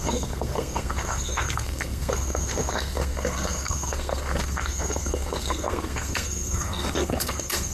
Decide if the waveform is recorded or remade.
remade